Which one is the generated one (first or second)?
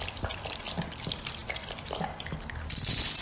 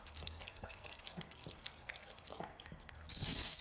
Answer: second